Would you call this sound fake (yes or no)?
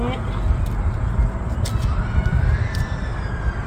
no